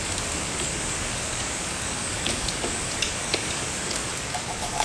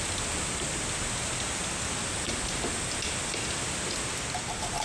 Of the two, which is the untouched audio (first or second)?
second